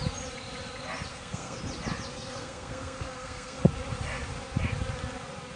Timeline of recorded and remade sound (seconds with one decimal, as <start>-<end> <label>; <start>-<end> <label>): 0.0-1.1 recorded; 1.1-1.6 remade; 1.6-2.1 recorded; 2.1-3.6 remade; 3.6-5.6 recorded